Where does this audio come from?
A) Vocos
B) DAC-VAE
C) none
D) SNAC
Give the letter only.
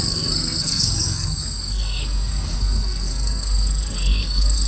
D